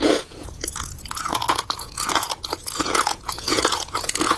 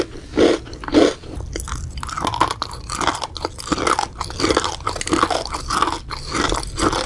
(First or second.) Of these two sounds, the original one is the second